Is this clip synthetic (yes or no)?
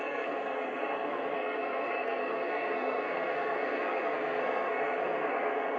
yes